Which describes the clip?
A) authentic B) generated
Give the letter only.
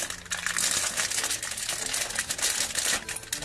A